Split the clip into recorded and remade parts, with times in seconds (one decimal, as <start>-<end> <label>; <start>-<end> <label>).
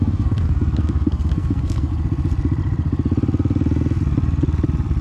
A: 0.0-1.9 remade; 1.9-5.0 recorded